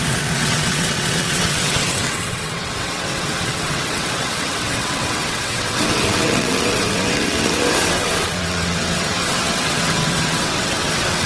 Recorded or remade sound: remade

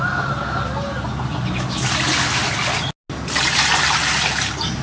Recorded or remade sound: recorded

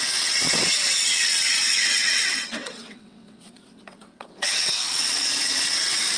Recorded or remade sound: remade